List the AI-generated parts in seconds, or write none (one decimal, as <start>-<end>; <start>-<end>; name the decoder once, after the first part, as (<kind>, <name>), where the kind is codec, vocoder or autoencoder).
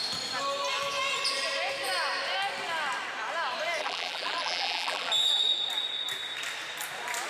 3.8-5.1 (vocoder, BigVGAN v2)